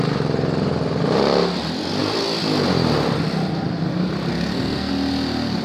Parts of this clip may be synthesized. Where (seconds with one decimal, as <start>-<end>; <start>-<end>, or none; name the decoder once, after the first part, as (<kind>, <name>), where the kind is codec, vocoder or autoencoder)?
4.3-4.9 (codec, SNAC)